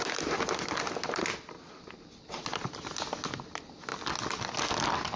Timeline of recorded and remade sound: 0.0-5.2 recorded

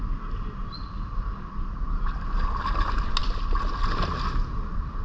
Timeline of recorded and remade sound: 0.0-5.0 recorded

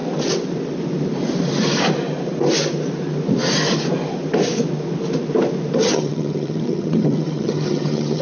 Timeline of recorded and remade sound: 0.0-5.8 recorded; 5.8-8.2 remade